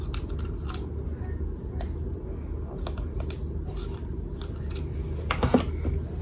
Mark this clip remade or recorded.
recorded